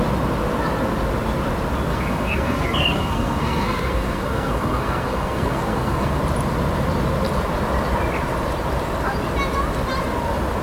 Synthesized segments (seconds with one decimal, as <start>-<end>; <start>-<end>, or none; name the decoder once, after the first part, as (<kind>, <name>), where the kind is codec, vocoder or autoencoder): 1.9-6.2 (codec, SNAC)